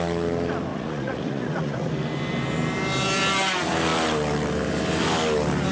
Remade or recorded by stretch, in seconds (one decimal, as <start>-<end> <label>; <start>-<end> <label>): 0.0-0.7 recorded; 0.7-1.9 remade; 1.9-5.7 recorded